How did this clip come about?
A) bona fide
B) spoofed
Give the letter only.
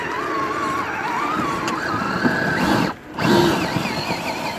A